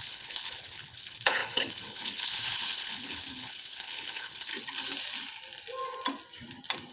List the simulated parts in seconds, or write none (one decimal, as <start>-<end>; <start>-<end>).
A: 0.0-4.5